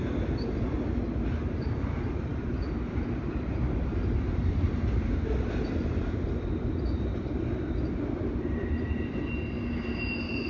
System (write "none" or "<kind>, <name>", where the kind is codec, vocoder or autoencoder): none